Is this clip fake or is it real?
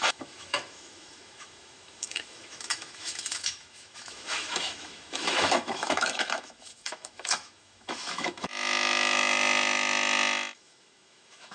fake